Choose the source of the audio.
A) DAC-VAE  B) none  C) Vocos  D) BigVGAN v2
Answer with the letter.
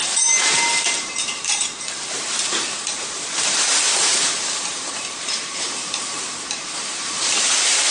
D